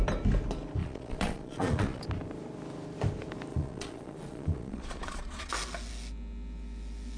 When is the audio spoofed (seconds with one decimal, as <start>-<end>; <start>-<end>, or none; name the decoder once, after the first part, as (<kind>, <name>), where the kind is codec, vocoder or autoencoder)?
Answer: 0.8-2.0 (vocoder, Vocos); 3.5-5.5